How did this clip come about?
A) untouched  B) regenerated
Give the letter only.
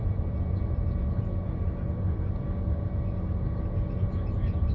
A